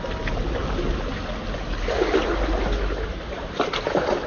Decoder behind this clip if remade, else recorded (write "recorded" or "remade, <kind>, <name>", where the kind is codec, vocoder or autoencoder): recorded